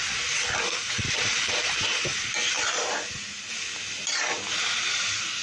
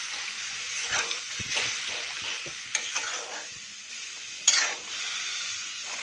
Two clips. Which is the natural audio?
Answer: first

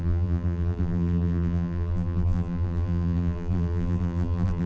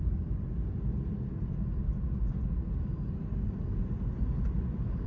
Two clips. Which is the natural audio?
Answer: second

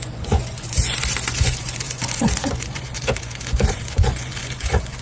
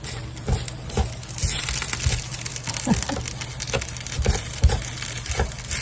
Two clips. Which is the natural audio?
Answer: second